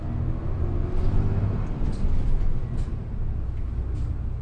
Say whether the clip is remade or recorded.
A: recorded